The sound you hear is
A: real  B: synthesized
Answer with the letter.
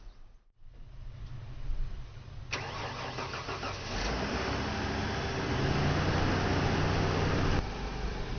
A